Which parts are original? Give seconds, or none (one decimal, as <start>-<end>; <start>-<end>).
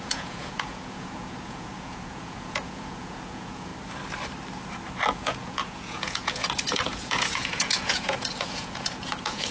3.7-5.1